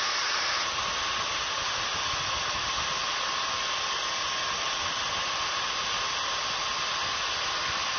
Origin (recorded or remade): recorded